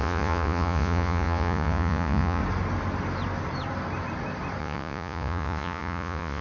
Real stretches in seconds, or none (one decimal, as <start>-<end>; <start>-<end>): 2.4-4.6

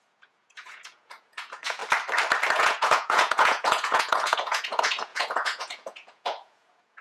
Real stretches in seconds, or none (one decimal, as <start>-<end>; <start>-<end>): 1.8-2.5

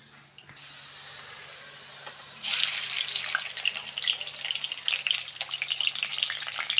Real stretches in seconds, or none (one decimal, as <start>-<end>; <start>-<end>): 6.1-6.8

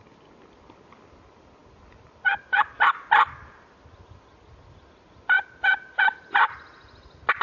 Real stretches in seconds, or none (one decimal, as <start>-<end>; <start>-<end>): 0.0-7.4

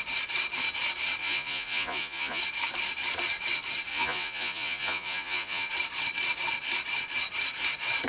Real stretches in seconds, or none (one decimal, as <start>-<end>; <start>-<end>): 0.0-1.2; 2.4-3.9; 5.7-8.1